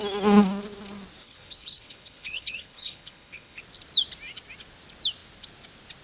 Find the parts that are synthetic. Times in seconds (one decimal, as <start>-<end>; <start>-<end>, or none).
1.2-3.6